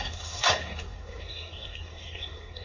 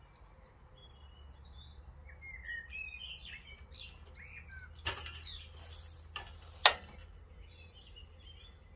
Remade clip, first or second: first